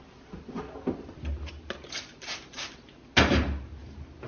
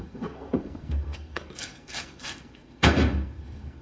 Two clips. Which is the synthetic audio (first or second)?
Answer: second